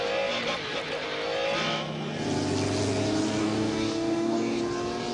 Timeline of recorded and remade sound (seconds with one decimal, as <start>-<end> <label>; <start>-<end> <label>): 0.0-3.4 recorded; 3.4-4.6 remade; 4.6-5.1 recorded